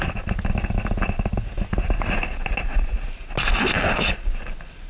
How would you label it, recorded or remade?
recorded